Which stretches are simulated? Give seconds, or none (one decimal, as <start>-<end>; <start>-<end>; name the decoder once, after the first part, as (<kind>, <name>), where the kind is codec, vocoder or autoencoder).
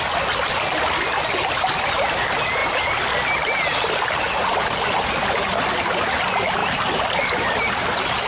none